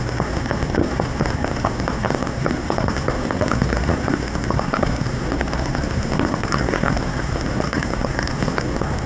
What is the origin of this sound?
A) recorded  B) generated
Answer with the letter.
B